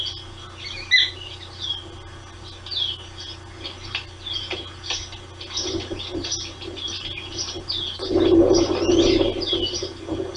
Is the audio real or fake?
real